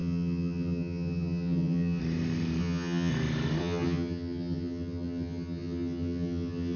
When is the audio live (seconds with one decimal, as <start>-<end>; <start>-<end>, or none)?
2.0-2.6; 3.1-3.6